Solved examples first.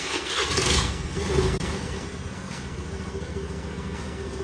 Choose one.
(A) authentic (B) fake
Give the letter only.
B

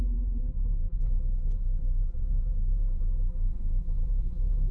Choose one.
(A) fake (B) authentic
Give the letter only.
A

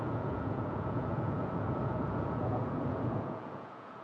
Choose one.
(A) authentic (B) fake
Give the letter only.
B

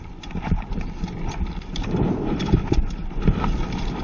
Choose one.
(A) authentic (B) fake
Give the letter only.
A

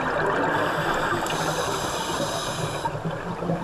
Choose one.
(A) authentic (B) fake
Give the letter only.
A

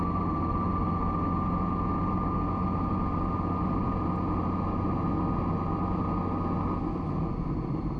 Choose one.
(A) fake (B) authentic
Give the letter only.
B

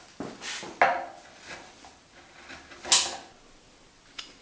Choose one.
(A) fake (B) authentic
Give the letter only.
B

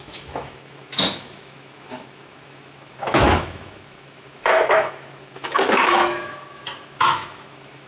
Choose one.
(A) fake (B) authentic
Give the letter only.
A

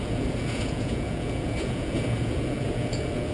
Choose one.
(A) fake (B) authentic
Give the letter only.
A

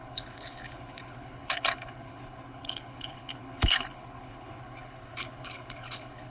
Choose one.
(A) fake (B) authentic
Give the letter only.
A